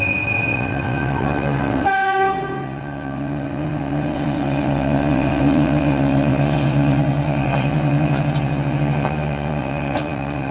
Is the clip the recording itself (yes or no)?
no